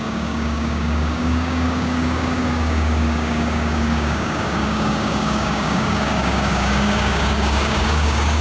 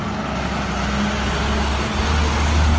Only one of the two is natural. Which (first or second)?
second